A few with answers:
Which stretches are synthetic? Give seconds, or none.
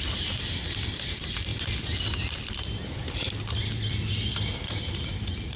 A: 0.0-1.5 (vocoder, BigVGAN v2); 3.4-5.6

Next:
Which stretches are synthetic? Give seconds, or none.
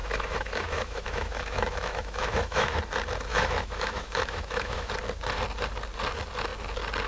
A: 0.0-2.8 (autoencoder, DAC-VAE); 3.3-4.9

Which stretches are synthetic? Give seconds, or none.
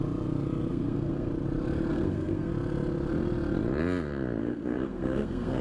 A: 0.7-1.3 (codec, SNAC); 1.9-2.5; 4.4-5.6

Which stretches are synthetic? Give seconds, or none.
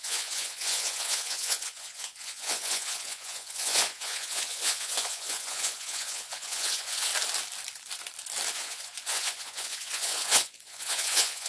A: 0.0-7.1 (vocoder, Vocos); 8.5-11.5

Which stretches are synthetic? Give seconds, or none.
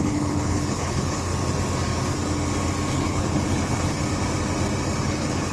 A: 0.0-1.3 (codec, HILCodec); 2.9-4.0; 5.0-5.5